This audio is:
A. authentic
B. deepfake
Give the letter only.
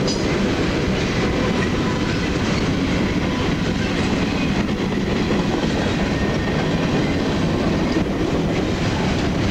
A